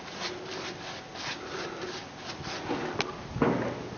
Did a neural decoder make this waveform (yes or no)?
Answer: no